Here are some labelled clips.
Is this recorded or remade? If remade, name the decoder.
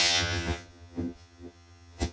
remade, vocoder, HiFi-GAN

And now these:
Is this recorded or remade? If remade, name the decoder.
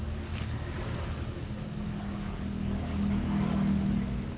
remade, codec, DAC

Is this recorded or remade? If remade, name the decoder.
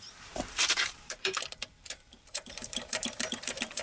remade, vocoder, BigVGAN v2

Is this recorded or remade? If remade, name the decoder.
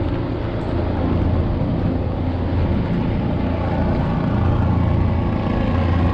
recorded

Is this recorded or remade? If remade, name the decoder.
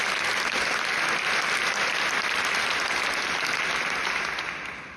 recorded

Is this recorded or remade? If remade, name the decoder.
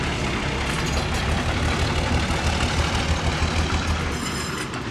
recorded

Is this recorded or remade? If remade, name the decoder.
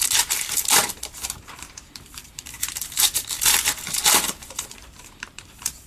remade, vocoder, BigVGAN v2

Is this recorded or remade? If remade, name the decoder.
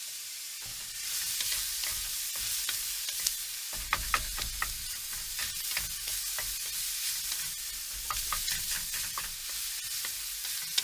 recorded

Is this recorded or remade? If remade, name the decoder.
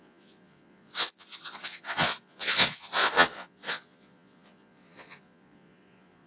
remade, vocoder, Vocos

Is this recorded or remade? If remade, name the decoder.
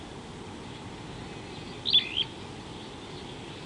recorded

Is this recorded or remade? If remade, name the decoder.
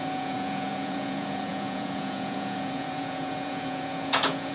remade, vocoder, Vocos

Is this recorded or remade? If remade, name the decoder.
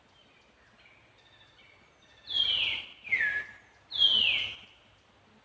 recorded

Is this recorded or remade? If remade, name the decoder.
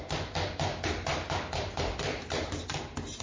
remade, vocoder, BigVGAN v2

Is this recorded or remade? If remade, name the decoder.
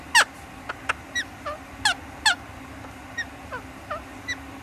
recorded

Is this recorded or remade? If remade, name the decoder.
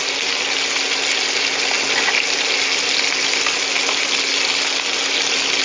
recorded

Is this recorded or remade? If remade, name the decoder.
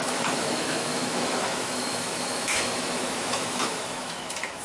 remade, autoencoder, DAC-VAE